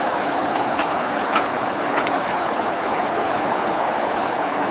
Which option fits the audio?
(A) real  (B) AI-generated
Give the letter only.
B